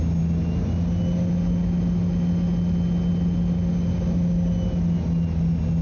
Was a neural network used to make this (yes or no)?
no